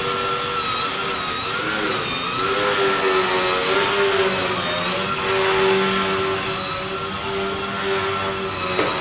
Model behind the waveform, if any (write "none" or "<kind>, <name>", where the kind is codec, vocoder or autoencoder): none